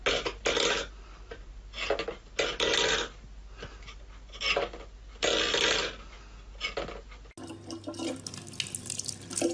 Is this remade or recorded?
recorded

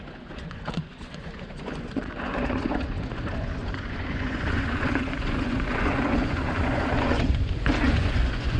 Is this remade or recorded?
remade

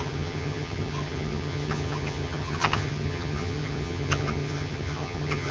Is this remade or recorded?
remade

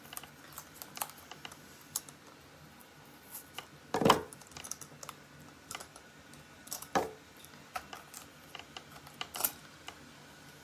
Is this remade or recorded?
recorded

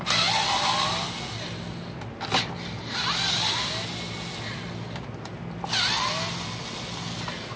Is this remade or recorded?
recorded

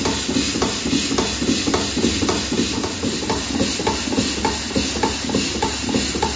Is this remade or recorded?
recorded